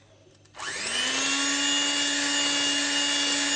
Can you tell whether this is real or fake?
real